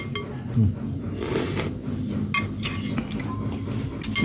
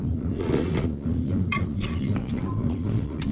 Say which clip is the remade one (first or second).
second